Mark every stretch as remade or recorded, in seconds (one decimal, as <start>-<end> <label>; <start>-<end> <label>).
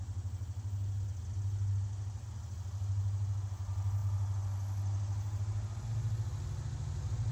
0.0-7.3 recorded